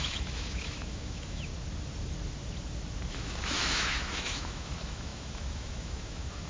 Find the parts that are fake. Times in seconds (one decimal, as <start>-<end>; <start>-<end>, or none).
0.0-1.5; 3.1-6.5